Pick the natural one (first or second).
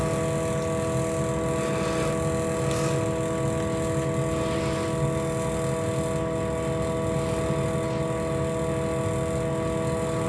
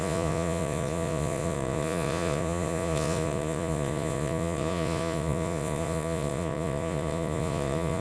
first